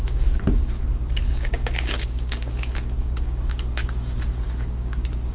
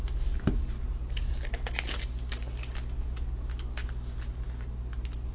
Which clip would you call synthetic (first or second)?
first